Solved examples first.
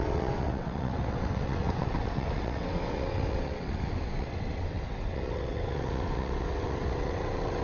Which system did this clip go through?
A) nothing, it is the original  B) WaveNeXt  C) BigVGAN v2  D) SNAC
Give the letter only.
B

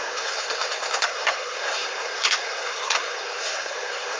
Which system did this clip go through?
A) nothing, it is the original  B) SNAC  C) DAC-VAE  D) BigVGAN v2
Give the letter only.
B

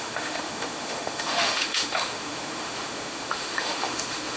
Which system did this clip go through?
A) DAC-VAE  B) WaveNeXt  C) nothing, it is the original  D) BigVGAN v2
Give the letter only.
A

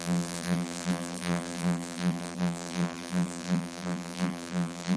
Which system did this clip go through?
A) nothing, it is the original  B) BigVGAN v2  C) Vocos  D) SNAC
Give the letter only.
B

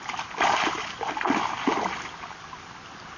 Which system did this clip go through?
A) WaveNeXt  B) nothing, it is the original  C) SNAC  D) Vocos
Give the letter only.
B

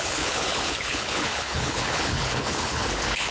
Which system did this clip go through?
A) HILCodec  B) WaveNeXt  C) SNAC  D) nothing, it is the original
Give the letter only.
A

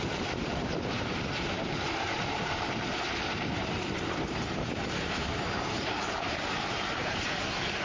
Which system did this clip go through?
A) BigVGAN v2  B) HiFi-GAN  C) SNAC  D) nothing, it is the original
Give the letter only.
A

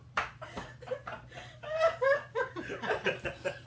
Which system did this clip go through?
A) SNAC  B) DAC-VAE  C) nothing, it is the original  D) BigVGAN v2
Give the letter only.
D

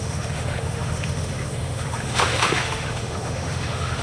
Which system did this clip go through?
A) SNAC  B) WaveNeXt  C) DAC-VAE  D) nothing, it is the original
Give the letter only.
C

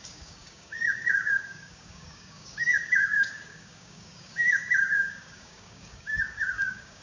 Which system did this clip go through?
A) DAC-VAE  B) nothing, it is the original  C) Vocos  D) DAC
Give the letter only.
D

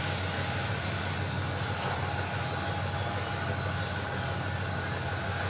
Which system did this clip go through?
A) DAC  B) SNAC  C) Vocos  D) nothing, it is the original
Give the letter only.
D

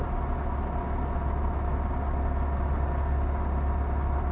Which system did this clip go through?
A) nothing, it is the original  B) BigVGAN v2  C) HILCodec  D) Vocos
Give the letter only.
A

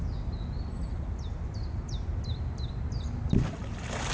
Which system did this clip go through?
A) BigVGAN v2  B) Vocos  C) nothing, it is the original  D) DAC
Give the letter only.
C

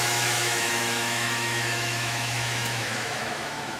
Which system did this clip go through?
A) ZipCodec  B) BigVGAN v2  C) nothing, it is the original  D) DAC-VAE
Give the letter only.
D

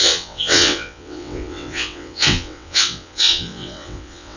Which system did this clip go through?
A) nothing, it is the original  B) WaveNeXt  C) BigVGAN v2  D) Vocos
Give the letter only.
B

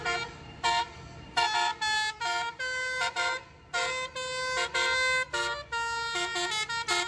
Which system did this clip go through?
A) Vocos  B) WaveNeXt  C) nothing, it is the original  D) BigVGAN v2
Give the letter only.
C